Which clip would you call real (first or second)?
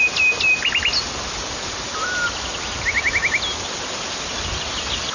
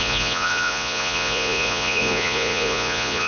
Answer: first